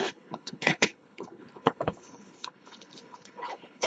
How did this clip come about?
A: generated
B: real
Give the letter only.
A